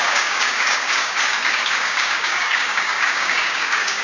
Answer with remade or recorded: remade